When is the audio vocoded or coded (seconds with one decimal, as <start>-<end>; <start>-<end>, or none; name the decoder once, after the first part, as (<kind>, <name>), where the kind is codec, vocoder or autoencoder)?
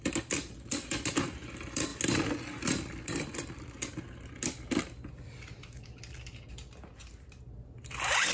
none